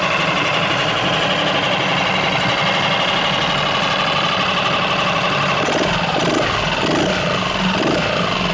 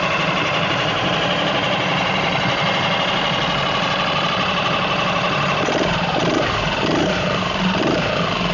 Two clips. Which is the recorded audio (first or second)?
first